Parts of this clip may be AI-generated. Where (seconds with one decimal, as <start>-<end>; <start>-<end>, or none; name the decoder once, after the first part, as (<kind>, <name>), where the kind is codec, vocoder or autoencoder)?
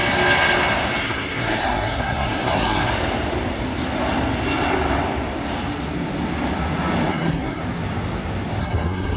1.0-2.9 (codec, SNAC); 7.1-7.6; 8.6-9.2